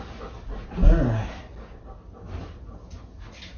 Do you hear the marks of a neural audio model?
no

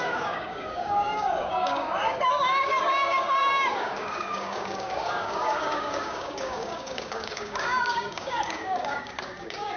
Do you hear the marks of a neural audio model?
yes